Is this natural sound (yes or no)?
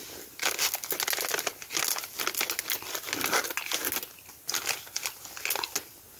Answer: yes